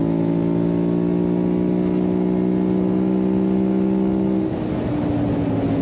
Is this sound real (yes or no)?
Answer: yes